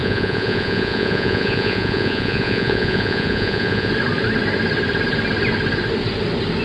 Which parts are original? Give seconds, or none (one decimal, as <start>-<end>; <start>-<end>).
3.9-6.6